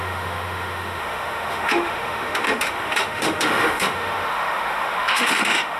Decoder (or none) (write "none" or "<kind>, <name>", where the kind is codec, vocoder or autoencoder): autoencoder, DAC-VAE